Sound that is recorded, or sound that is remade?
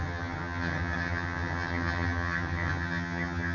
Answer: remade